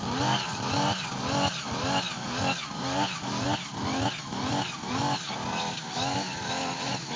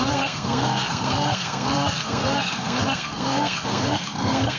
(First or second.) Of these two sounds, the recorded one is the first